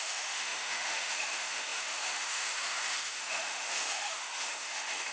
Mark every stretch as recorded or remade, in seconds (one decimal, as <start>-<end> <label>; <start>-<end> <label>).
0.0-5.1 remade